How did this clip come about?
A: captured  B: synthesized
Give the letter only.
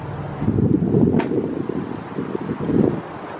A